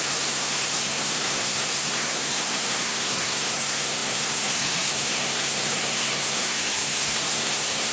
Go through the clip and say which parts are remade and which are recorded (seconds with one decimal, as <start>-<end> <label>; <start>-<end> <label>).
0.0-7.9 remade